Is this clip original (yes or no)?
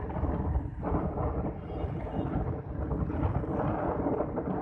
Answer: no